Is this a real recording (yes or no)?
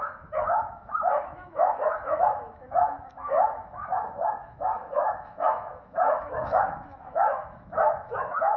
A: no